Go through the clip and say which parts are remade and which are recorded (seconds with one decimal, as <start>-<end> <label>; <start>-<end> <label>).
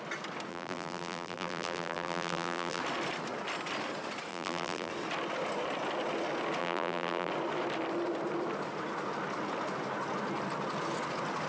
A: 0.0-0.5 recorded; 0.5-2.8 remade; 2.8-4.3 recorded; 4.3-4.9 remade; 4.9-6.6 recorded; 6.6-7.3 remade; 7.3-11.5 recorded